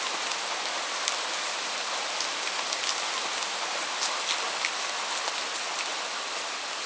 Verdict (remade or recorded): recorded